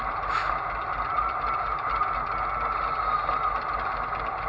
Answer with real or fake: real